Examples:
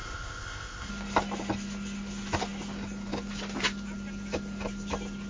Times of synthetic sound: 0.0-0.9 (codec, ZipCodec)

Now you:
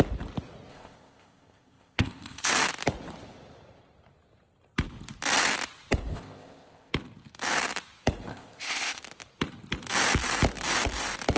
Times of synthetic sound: 0.7-2.5 (codec, ZipCodec); 6.1-6.9; 8.3-9.0

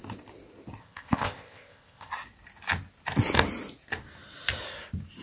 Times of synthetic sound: 0.8-2.1 (codec, ZipCodec)